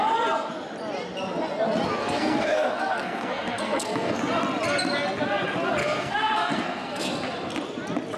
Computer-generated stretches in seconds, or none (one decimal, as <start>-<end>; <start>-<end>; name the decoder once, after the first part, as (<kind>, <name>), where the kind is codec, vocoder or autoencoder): 2.0-4.2 (codec, SNAC); 5.8-7.1